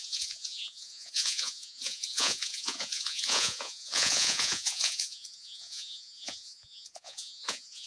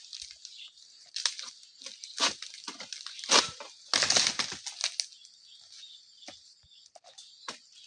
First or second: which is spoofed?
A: first